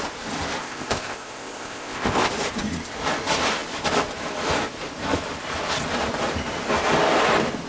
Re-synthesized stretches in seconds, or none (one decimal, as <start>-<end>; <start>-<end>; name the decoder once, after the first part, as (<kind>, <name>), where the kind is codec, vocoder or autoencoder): 0.6-2.3 (codec, ZipCodec)

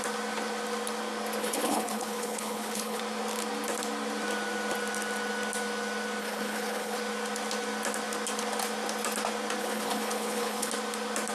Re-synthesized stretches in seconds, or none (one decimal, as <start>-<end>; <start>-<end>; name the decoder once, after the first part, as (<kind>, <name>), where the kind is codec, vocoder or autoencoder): 1.4-3.0 (codec, HILCodec); 6.2-7.0; 9.6-10.7

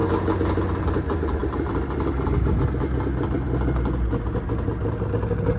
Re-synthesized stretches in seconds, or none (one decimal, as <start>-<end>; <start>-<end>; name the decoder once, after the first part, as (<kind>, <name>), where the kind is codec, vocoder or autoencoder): none

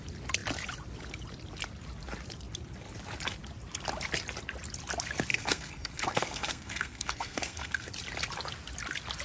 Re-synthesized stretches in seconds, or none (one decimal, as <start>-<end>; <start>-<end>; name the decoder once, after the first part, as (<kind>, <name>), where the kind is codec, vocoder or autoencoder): 5.3-7.9 (codec, SNAC)

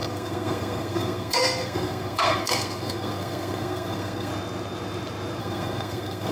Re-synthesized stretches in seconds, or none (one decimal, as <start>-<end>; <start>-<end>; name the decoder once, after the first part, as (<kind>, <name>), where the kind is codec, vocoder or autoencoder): 0.0-4.3 (codec, SNAC); 5.4-6.3

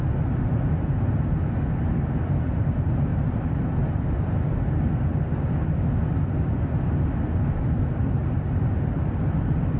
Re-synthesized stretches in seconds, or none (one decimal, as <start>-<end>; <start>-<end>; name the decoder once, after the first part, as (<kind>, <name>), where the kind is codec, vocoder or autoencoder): 3.1-4.5 (vocoder, BigVGAN v2); 8.2-8.7

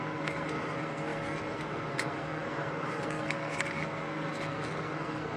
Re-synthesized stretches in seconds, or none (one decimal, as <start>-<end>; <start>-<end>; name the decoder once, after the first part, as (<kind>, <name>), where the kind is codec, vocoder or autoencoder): 0.0-5.4 (codec, SNAC)